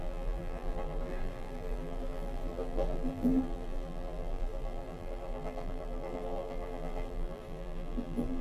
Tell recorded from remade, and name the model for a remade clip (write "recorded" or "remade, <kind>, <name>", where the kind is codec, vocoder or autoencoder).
remade, vocoder, BigVGAN v2